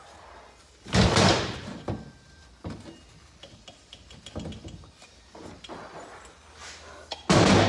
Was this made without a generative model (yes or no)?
yes